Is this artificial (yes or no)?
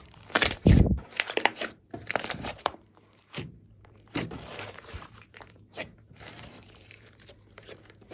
yes